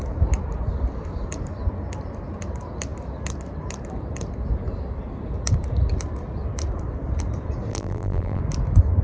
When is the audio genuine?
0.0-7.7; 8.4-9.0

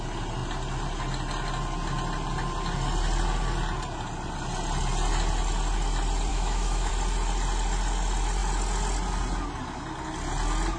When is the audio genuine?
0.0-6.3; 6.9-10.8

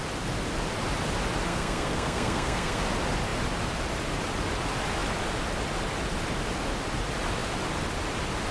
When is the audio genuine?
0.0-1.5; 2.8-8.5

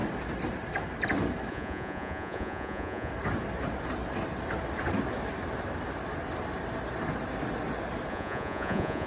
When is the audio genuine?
0.0-1.5; 3.1-8.1